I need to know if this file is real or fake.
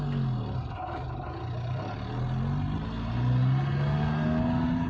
real